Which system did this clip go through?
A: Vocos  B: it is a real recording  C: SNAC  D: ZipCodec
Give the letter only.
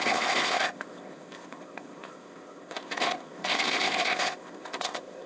D